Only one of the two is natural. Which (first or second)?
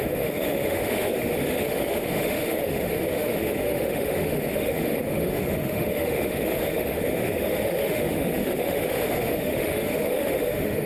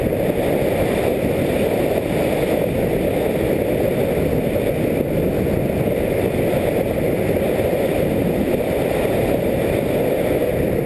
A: second